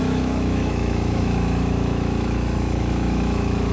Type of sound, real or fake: fake